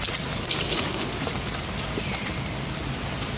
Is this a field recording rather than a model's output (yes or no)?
yes